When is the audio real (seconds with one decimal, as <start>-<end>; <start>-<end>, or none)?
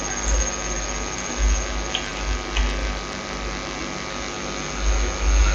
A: 0.0-5.5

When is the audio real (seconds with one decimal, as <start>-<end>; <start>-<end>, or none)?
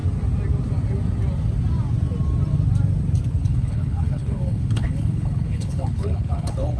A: 0.0-3.4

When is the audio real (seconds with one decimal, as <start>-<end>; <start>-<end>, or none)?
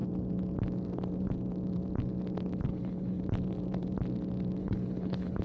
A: 0.0-2.7; 3.2-4.6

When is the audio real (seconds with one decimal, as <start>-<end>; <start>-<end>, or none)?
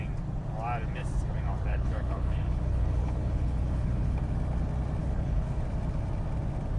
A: 0.0-1.7; 4.2-5.0; 5.6-6.8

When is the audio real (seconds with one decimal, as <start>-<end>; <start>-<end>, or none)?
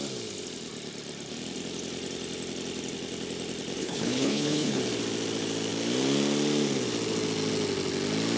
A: 0.0-3.8; 4.8-8.4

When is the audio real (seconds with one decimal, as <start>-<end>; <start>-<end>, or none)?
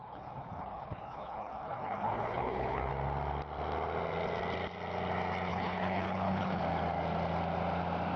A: 2.9-5.5; 6.6-8.2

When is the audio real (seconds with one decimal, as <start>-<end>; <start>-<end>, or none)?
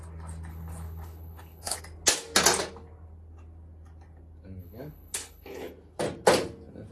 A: 0.0-0.5; 1.8-4.6; 5.7-6.9